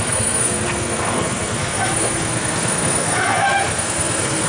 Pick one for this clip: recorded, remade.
remade